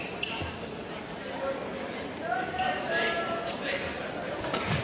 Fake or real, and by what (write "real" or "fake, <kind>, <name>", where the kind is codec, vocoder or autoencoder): real